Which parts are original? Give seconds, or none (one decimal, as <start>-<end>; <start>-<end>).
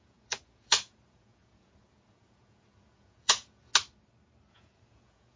3.7-4.5